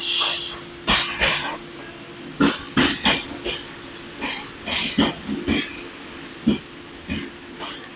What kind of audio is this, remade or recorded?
recorded